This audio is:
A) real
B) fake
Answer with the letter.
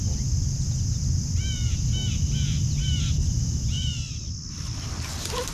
A